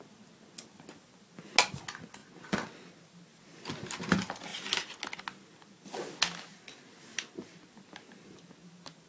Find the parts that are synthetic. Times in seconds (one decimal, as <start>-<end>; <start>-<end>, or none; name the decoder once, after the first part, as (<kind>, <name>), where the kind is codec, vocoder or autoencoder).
none